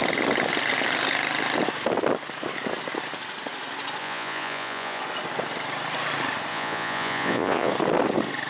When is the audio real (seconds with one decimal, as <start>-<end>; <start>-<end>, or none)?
0.0-4.0; 5.0-6.5; 7.7-8.5